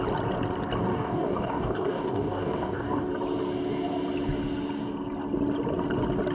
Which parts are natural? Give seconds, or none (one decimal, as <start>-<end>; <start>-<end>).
0.0-0.9; 3.1-6.3